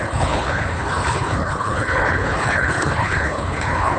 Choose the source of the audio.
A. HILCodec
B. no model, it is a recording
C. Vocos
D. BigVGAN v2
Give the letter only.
A